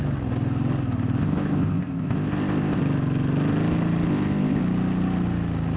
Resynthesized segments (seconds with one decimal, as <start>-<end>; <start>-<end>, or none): 1.2-2.8; 4.1-4.6